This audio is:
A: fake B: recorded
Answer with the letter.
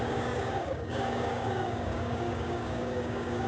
A